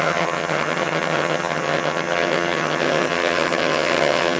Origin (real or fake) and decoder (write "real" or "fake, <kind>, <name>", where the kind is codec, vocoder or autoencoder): fake, vocoder, HiFi-GAN